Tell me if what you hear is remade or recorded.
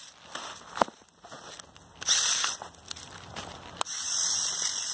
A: recorded